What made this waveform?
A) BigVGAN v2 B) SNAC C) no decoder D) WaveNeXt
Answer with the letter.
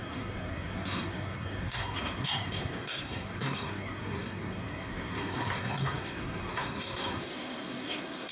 B